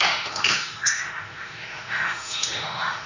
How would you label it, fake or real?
fake